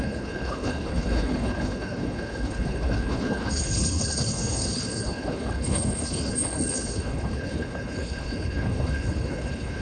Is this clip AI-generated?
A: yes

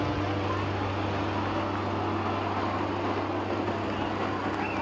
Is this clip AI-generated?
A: no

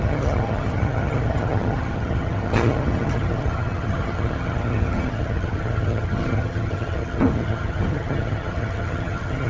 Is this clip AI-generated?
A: yes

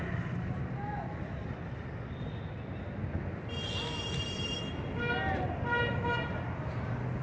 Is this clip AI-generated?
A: no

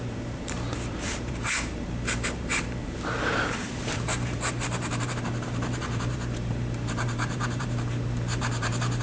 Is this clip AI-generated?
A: yes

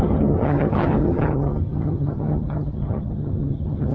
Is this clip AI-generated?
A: yes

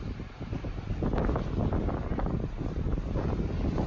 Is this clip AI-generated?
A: no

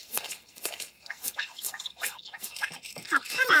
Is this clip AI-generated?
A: yes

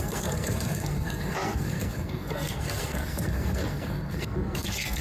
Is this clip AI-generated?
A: yes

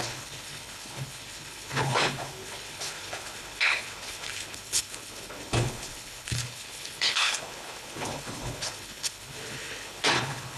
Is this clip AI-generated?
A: yes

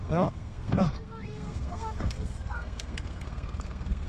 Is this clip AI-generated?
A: yes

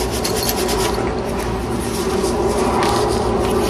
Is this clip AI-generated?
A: no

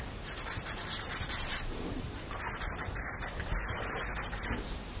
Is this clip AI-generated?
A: yes